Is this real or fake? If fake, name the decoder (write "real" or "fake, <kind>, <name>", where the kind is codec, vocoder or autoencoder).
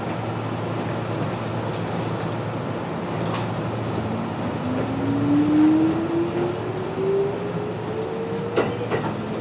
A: real